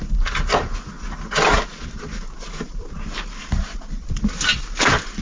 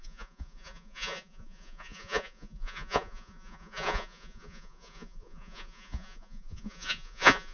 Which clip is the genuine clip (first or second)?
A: first